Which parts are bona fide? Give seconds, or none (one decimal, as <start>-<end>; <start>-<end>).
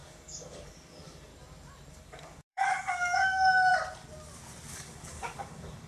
1.3-1.9; 3.7-4.7